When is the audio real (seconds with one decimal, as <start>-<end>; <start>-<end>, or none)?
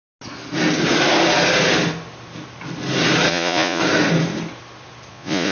0.0-3.3; 3.8-5.1